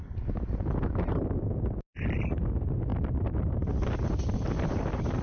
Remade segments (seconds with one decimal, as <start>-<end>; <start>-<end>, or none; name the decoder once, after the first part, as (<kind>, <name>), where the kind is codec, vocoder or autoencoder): 2.9-3.7 (vocoder, BigVGAN v2)